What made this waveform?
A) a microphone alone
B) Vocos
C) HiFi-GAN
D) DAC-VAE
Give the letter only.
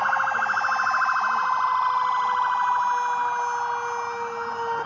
A